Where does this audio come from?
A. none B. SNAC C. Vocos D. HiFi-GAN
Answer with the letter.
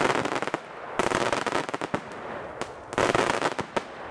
A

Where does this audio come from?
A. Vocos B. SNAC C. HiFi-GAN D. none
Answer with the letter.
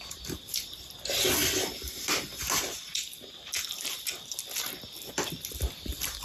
D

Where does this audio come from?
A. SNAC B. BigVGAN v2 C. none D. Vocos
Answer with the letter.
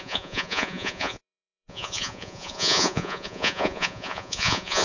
D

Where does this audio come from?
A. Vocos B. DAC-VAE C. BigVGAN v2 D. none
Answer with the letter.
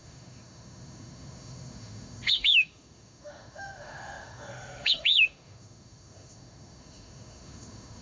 B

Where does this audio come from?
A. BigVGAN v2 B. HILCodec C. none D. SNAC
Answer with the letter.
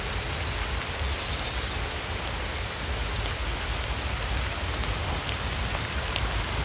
C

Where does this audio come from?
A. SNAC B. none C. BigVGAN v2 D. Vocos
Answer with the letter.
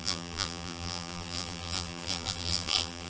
C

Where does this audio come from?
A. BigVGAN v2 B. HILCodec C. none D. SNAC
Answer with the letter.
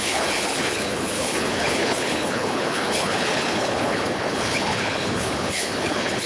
B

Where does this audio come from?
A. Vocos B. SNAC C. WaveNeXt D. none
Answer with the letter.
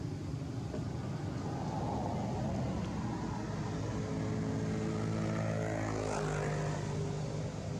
D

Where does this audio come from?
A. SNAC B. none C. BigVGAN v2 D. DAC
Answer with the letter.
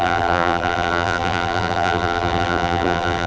C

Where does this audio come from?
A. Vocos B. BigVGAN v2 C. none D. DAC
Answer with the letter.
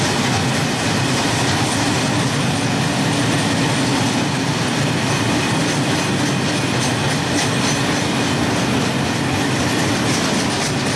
C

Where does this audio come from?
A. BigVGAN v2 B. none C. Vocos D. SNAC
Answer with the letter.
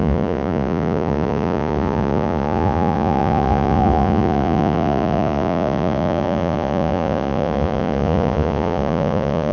C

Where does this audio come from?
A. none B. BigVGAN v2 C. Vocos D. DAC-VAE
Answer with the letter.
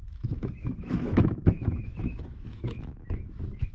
D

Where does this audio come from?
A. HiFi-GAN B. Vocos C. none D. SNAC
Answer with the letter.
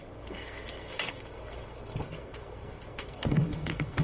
D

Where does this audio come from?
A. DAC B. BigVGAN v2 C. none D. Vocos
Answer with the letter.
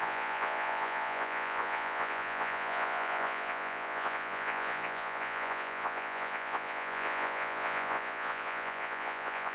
D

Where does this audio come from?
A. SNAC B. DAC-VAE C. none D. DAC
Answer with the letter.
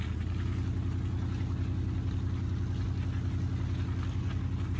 C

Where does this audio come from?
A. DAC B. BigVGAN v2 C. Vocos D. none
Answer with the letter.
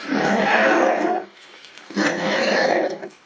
A